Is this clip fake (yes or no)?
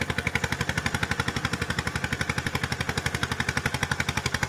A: no